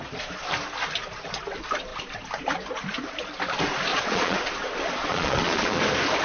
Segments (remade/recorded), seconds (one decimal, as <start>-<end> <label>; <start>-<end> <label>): 0.0-3.9 recorded; 3.9-4.5 remade; 4.5-5.0 recorded; 5.0-5.8 remade; 5.8-6.2 recorded